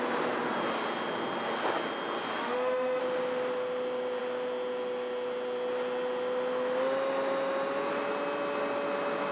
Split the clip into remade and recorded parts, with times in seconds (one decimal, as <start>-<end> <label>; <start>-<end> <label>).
0.0-2.4 recorded; 2.4-3.0 remade; 3.0-9.3 recorded